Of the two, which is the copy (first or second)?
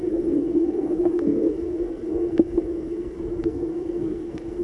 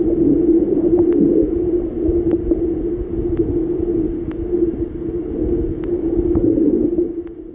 first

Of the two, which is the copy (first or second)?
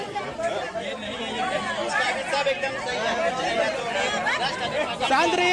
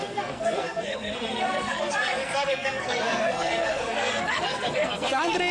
second